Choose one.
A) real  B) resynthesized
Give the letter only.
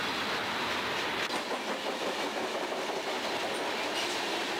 A